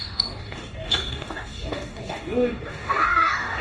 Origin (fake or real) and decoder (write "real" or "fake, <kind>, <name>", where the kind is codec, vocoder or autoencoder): fake, codec, DAC